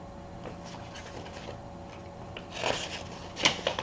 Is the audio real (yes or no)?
yes